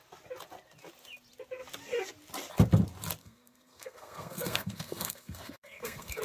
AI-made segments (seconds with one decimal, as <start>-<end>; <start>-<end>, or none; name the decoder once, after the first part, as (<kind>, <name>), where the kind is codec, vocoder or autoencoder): 3.2-6.2 (codec, SNAC)